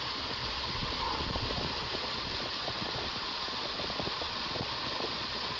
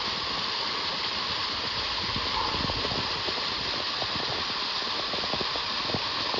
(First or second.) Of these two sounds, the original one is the second